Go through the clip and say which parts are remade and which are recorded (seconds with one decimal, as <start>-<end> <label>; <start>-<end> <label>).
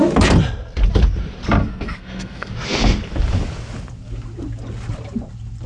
0.0-1.6 recorded; 1.6-2.5 remade; 2.5-5.7 recorded